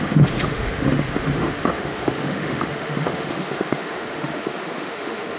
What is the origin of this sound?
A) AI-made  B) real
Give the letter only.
A